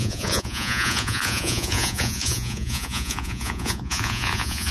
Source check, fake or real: fake